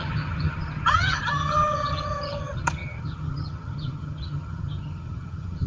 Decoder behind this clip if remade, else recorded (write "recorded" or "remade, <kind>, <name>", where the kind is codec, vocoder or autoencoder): remade, vocoder, HiFi-GAN